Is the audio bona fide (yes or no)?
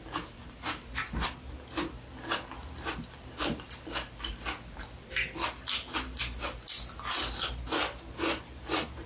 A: no